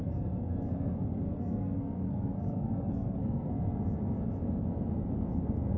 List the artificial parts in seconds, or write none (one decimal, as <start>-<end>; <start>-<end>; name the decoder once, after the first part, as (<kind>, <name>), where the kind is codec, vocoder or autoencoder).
0.0-3.5 (codec, SNAC)

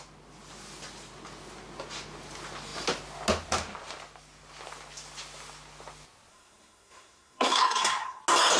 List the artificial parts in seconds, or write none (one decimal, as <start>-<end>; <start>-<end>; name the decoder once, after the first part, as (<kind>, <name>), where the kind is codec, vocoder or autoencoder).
6.3-8.2 (codec, SNAC)

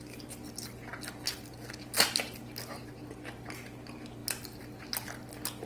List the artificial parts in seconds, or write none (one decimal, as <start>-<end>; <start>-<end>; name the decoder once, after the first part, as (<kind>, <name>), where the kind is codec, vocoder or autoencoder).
none

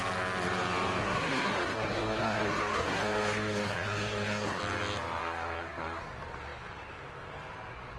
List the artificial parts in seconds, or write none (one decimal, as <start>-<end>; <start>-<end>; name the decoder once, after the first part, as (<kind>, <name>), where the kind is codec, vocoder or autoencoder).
1.0-4.6 (codec, SNAC); 5.2-6.0

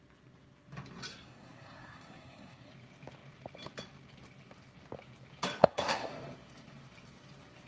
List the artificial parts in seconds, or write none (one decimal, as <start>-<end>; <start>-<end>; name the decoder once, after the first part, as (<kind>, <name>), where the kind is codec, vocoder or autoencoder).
1.1-2.7 (codec, SNAC); 5.6-6.1

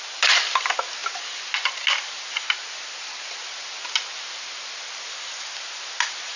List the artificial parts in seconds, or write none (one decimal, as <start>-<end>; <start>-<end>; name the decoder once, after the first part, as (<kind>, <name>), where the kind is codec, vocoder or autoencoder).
none

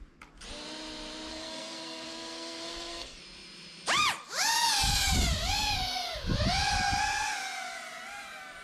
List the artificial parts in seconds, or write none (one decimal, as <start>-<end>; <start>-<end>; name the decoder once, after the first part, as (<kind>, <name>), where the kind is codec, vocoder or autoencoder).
1.3-3.2 (codec, SNAC)

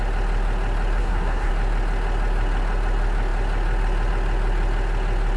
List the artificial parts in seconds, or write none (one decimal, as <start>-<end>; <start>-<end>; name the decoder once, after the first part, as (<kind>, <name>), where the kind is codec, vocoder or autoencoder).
1.0-1.5 (codec, SNAC)